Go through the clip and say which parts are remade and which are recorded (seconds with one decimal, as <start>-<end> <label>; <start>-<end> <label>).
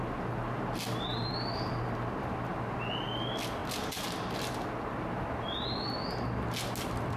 0.0-7.2 recorded